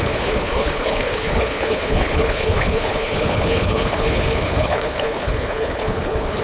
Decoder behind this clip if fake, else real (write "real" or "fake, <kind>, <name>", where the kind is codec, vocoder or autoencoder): fake, codec, HILCodec